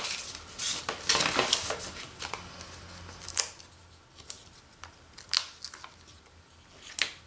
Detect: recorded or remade recorded